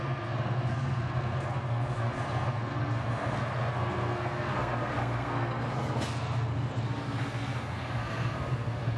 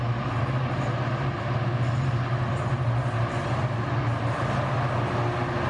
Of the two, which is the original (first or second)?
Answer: second